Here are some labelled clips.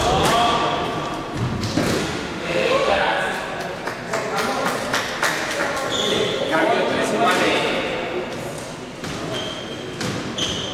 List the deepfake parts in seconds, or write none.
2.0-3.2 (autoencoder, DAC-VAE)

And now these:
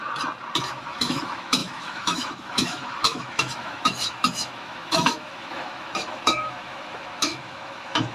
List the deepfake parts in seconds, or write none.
0.6-8.1 (autoencoder, DAC-VAE)

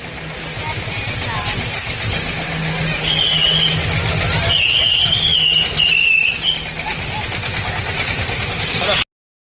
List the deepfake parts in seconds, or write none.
none

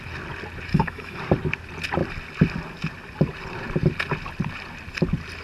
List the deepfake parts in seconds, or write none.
0.7-1.2 (autoencoder, DAC-VAE)